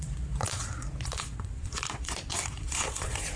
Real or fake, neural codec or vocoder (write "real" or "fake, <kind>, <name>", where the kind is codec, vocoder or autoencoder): fake, vocoder, Vocos